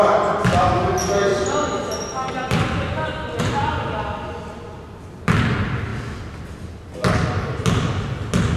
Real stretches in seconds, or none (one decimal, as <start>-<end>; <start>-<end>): 0.0-8.6